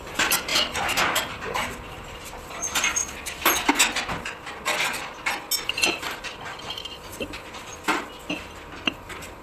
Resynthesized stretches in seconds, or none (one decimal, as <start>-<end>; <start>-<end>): 0.0-0.5; 1.0-3.0; 5.7-7.7; 8.3-9.4